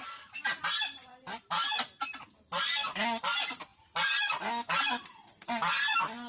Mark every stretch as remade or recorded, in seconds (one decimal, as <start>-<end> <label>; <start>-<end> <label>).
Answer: 0.0-6.3 recorded